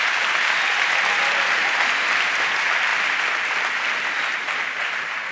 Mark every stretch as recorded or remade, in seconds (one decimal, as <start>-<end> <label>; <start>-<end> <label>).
0.0-2.9 recorded; 2.9-4.3 remade; 4.3-5.3 recorded